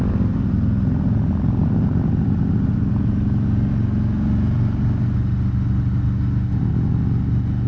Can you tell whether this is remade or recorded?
recorded